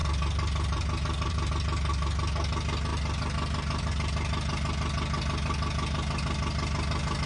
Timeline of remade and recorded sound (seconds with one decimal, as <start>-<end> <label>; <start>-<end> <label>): 0.0-1.5 remade; 1.5-2.9 recorded; 2.9-3.9 remade; 3.9-7.3 recorded